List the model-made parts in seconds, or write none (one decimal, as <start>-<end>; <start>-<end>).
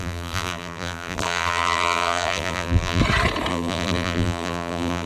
0.0-3.0; 3.5-5.1